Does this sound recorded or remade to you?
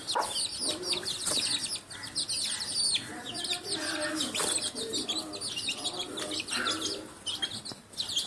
recorded